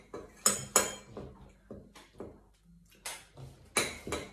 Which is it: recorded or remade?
recorded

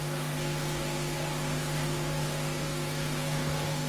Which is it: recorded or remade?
remade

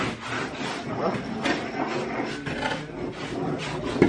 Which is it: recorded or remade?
recorded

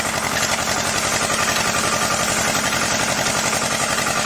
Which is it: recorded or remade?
recorded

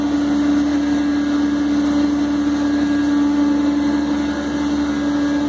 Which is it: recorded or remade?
recorded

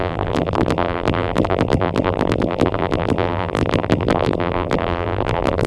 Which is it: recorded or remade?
remade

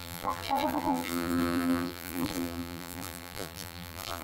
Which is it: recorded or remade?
remade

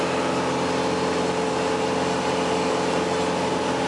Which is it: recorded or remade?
recorded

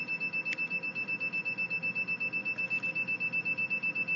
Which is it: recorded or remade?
recorded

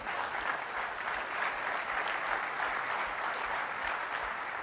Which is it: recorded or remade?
recorded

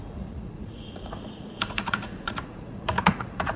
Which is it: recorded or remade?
remade